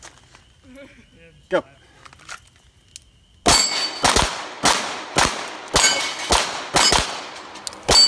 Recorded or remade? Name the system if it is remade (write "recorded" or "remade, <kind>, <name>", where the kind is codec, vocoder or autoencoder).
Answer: recorded